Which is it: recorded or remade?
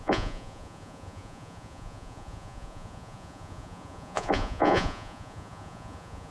remade